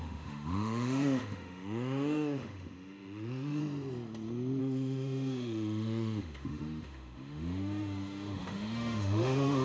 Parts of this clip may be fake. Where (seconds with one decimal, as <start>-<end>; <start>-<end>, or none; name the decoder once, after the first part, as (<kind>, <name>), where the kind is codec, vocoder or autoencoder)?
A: 0.0-3.6 (autoencoder, DAC-VAE); 4.6-9.6